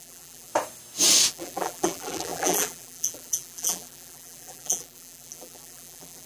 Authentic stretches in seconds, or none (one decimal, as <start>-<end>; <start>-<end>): 0.5-1.3